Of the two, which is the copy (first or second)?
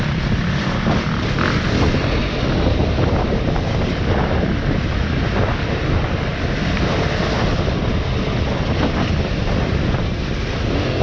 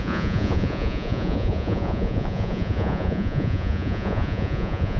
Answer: second